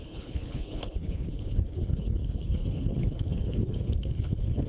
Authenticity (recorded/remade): remade